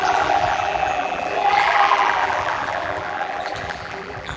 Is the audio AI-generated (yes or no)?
yes